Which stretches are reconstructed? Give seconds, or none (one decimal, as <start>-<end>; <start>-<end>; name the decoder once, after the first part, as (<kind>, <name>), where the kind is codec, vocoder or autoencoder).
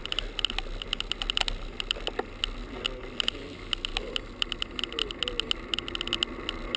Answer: none